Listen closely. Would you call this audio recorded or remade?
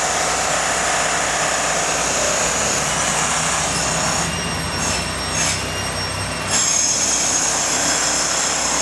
recorded